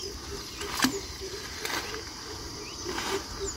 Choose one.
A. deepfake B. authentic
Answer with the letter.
B